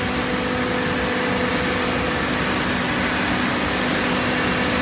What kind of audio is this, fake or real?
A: real